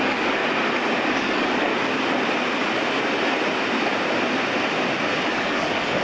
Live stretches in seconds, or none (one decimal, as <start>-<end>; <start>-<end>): 0.4-1.1; 1.7-5.3